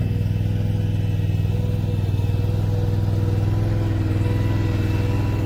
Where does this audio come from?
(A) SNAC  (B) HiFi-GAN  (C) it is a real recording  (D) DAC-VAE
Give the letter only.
C